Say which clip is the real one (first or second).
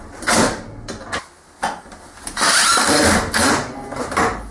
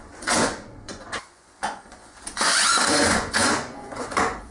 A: first